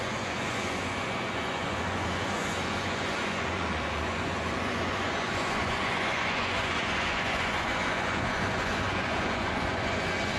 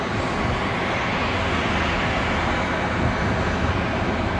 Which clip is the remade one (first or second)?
first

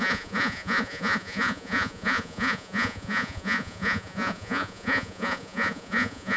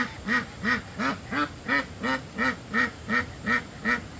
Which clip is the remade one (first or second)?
first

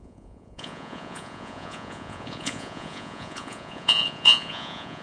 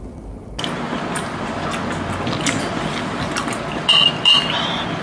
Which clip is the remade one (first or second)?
first